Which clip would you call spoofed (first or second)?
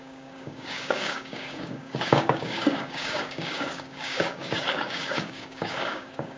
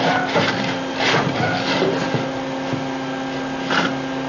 first